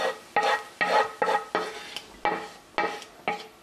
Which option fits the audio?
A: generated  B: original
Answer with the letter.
B